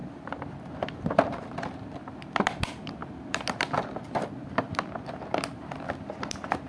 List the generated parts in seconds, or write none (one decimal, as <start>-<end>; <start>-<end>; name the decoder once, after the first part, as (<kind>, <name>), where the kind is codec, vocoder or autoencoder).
0.7-6.7 (vocoder, BigVGAN v2)